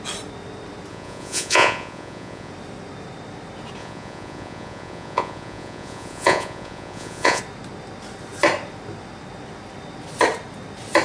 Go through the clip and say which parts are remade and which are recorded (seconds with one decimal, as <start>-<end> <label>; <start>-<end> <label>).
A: 0.0-0.9 recorded; 0.9-2.5 remade; 2.5-3.8 recorded; 3.8-7.4 remade; 7.4-11.0 recorded